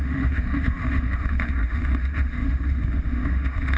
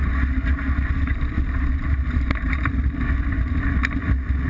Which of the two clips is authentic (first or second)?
second